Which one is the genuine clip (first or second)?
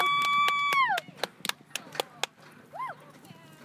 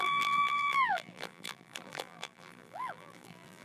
first